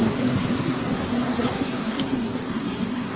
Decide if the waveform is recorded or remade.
remade